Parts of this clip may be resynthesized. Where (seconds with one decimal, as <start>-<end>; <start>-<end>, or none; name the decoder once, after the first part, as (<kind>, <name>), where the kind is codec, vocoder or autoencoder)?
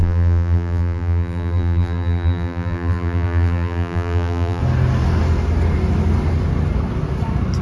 0.0-4.6 (vocoder, BigVGAN v2)